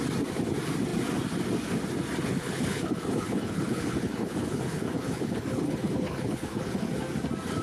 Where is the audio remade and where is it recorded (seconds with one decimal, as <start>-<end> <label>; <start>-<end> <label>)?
0.0-2.4 recorded; 2.4-6.9 remade; 6.9-7.6 recorded